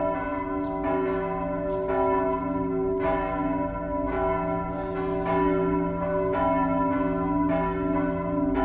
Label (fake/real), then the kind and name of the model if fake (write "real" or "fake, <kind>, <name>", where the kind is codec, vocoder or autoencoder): real